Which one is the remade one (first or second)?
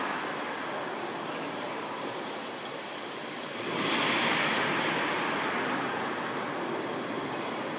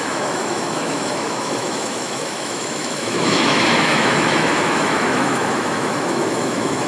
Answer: second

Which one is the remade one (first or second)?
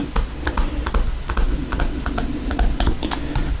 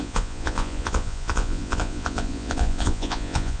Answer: second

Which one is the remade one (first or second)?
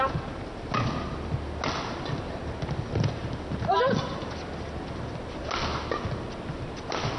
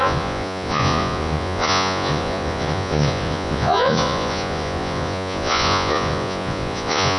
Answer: second